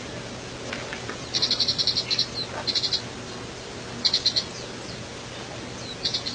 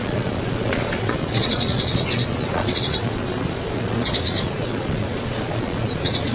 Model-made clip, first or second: second